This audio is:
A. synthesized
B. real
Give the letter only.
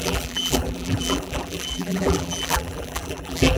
A